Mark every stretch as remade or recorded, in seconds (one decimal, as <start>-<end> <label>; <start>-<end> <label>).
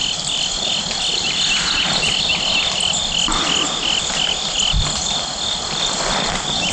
0.0-6.7 recorded